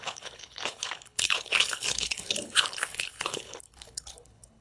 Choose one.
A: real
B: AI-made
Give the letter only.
B